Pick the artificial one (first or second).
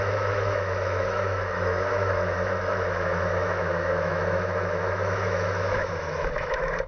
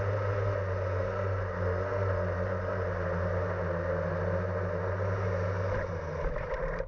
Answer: first